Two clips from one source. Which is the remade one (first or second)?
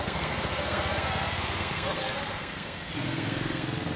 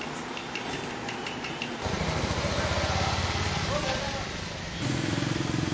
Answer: first